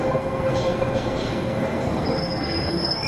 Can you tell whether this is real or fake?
fake